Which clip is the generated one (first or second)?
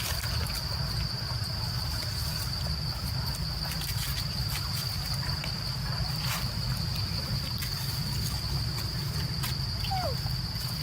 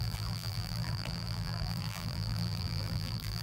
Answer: second